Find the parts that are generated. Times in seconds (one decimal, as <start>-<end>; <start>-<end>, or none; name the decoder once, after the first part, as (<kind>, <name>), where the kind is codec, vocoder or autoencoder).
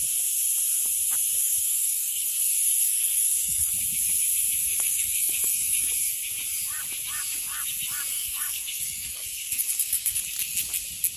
1.4-3.7 (codec, SNAC); 4.6-5.9; 8.1-10.2